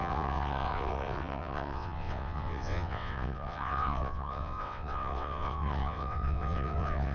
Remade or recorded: remade